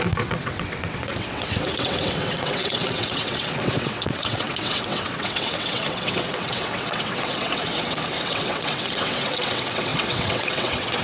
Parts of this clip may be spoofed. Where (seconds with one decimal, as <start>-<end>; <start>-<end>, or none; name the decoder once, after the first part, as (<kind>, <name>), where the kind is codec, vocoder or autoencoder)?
0.0-11.0 (vocoder, WaveNeXt)